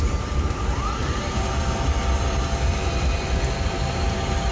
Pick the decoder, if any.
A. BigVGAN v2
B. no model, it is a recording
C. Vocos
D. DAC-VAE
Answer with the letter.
A